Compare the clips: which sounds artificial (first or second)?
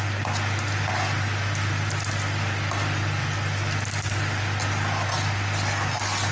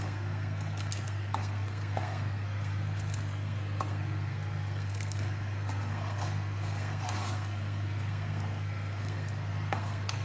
second